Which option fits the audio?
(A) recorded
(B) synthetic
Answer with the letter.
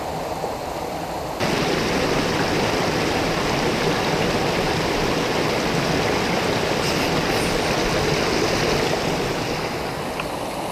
A